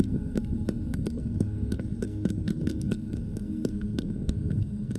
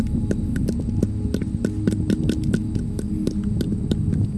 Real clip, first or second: second